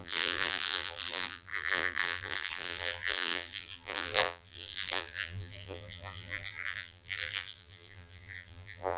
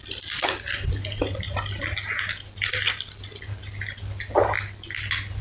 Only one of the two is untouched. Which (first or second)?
second